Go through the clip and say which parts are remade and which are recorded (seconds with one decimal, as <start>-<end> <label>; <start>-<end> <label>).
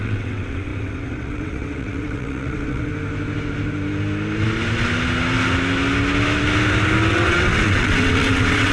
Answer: 0.0-2.9 remade; 2.9-7.1 recorded; 7.1-8.7 remade